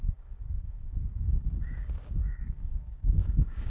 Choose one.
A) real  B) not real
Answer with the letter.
B